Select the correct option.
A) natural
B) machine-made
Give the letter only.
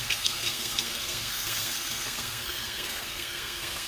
B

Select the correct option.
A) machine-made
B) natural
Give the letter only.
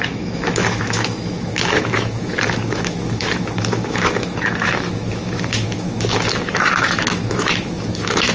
A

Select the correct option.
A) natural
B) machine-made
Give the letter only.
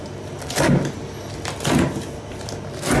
A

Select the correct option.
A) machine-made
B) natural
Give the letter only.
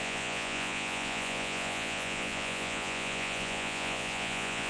A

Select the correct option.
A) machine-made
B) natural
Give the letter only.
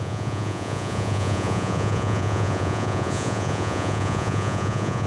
A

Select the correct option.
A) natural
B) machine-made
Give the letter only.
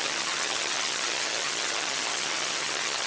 B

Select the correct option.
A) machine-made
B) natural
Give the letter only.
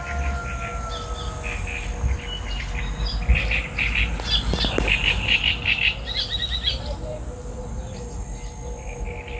B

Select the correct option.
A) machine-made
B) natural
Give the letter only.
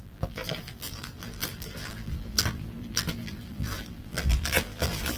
A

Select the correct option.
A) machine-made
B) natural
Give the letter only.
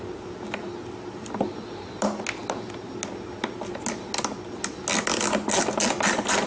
B